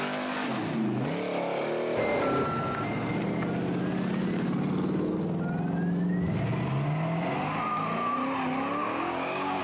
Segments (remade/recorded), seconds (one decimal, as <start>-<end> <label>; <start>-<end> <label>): 0.0-8.8 recorded; 8.8-9.6 remade